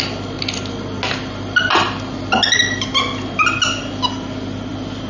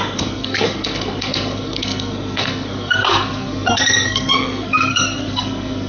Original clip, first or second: first